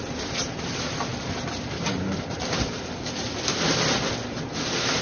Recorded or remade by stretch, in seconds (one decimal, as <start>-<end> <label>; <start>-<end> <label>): 0.0-1.1 recorded; 1.1-4.1 remade; 4.1-5.0 recorded